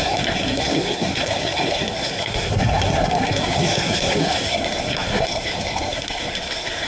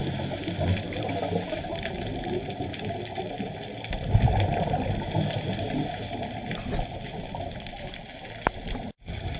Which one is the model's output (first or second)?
first